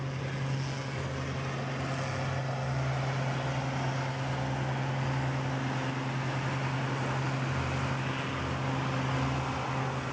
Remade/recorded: recorded